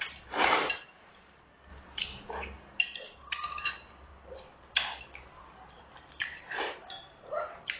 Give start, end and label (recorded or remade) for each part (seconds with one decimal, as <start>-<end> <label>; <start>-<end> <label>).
0.0-1.7 remade; 1.7-2.8 recorded; 2.8-4.1 remade; 4.1-5.4 recorded; 5.4-7.8 remade